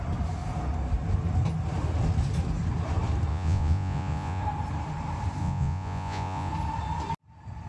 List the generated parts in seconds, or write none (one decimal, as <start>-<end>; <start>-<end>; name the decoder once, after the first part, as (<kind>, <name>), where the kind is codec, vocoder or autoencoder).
3.3-4.4 (vocoder, Vocos); 5.4-6.5